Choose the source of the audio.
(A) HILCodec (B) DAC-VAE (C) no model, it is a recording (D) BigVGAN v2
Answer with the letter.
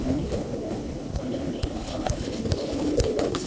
A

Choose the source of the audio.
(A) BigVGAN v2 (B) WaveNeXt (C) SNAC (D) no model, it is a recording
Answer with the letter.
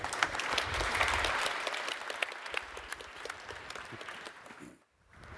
D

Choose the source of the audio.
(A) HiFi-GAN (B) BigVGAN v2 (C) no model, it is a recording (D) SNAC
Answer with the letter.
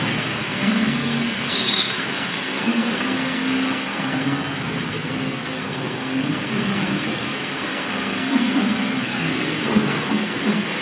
D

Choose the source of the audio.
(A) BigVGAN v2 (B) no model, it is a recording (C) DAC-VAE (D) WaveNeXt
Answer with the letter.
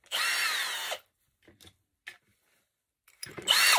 B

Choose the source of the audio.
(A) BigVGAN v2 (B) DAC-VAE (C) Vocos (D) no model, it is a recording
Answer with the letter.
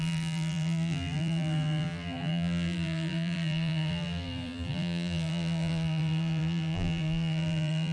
A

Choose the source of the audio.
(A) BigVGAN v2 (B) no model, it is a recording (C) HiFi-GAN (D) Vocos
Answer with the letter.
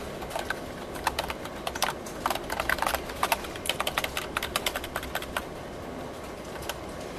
B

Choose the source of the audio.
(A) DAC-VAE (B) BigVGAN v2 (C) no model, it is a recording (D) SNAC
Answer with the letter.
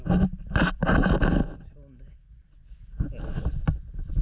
C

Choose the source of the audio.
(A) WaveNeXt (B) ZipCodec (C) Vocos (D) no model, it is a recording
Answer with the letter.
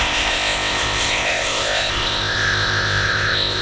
B